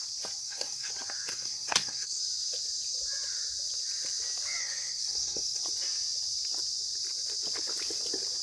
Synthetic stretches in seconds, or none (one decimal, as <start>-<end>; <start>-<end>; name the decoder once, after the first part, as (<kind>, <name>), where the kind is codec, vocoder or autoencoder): 0.4-0.9 (codec, SNAC); 1.3-2.2; 4.6-5.6